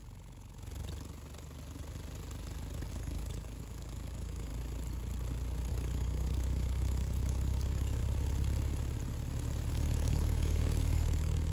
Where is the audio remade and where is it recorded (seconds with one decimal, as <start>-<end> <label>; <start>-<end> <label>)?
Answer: 0.0-2.9 recorded; 2.9-4.5 remade; 4.5-5.7 recorded; 5.7-8.0 remade; 8.0-9.7 recorded; 9.7-11.5 remade